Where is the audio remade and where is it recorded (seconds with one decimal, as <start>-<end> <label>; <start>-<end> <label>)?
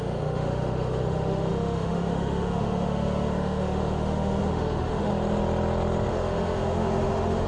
0.0-5.1 remade; 5.1-6.1 recorded; 6.1-7.5 remade